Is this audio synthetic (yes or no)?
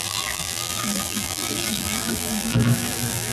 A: yes